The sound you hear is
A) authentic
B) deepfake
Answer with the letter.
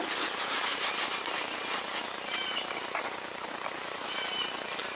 A